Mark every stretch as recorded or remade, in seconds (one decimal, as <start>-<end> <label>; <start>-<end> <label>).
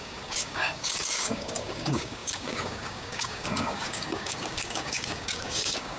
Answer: 0.0-6.0 remade